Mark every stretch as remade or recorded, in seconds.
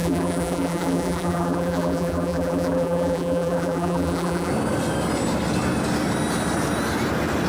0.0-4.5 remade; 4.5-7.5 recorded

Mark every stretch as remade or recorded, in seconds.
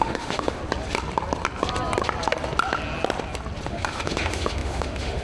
0.0-0.6 remade; 0.6-3.7 recorded; 3.7-5.2 remade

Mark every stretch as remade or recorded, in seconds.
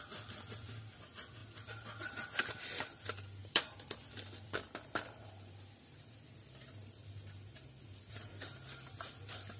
0.0-1.4 recorded; 1.4-2.8 remade; 2.8-3.4 recorded; 3.4-7.8 remade; 7.8-9.6 recorded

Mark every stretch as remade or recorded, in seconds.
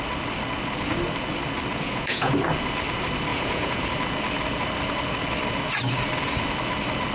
0.0-1.7 recorded; 1.7-2.3 remade; 2.3-3.3 recorded; 3.3-3.9 remade; 3.9-7.1 recorded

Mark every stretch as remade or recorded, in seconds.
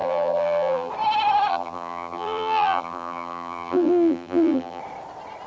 0.0-0.9 remade; 0.9-1.5 recorded; 1.5-4.8 remade; 4.8-5.5 recorded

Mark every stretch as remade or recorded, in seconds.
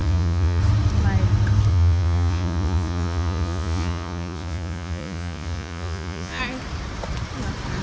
0.0-0.6 remade; 0.6-1.7 recorded; 1.7-6.4 remade; 6.4-7.8 recorded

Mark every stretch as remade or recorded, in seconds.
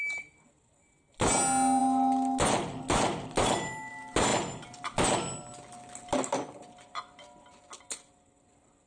0.0-8.9 recorded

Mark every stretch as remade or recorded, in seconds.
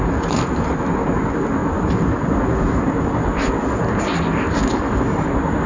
0.0-5.7 recorded